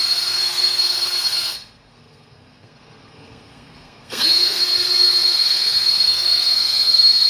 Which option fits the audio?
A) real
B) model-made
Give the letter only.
B